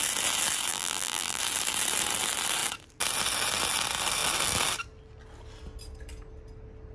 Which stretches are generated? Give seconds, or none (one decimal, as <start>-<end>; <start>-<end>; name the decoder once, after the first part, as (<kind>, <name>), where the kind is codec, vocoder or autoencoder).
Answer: 0.7-1.4 (vocoder, BigVGAN v2)